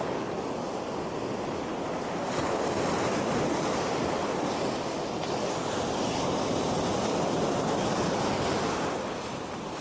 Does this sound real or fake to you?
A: real